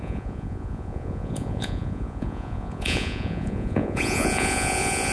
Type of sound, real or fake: fake